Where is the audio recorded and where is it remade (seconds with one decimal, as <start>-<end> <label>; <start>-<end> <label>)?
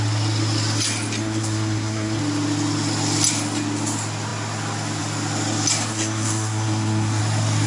0.0-1.2 recorded; 1.2-2.2 remade; 2.2-5.9 recorded; 5.9-7.2 remade; 7.2-7.7 recorded